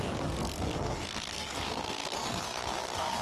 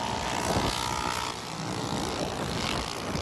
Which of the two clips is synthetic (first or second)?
first